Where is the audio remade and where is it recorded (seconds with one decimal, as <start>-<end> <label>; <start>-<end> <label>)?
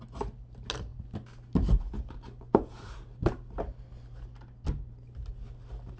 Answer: 0.0-6.0 recorded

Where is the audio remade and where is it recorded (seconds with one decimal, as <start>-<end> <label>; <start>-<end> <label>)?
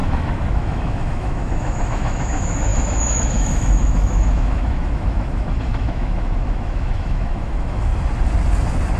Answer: 0.0-7.9 remade; 7.9-9.0 recorded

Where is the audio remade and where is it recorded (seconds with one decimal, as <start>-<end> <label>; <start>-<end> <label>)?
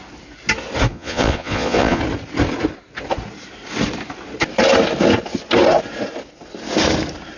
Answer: 0.0-0.9 recorded; 0.9-2.0 remade; 2.0-7.4 recorded